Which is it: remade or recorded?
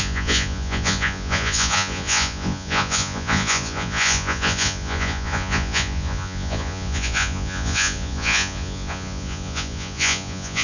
remade